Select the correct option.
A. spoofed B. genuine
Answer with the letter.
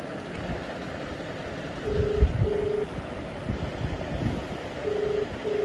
B